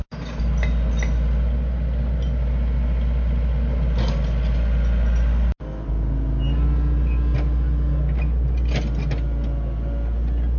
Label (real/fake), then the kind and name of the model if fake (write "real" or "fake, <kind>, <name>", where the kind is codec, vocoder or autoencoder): real